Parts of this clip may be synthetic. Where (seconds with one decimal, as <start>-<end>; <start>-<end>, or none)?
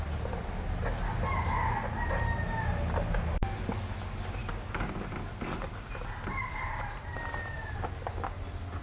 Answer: 4.4-4.9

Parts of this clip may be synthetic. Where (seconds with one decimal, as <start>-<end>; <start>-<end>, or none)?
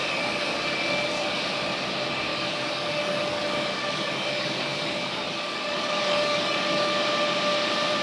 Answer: 0.0-1.4; 2.3-6.9